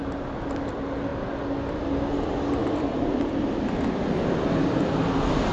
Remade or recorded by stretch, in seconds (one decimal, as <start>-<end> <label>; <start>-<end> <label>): 0.0-5.5 recorded